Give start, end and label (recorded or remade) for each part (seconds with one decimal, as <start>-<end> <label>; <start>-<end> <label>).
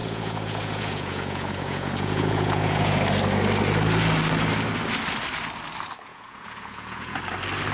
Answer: 0.0-3.0 remade; 3.0-6.1 recorded; 6.1-7.2 remade; 7.2-7.7 recorded